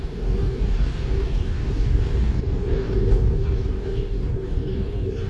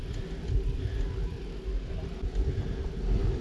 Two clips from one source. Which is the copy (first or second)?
first